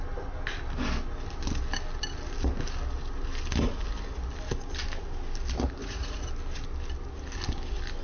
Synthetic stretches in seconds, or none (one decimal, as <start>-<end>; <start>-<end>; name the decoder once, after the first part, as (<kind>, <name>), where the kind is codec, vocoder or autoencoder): 5.8-6.3 (vocoder, Vocos)